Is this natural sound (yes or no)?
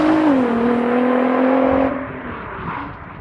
yes